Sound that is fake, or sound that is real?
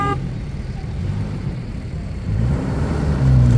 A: fake